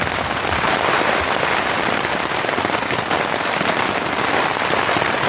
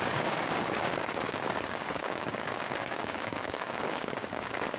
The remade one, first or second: second